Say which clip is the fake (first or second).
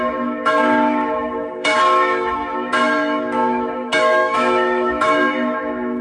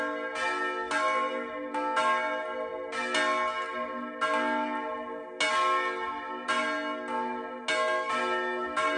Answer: first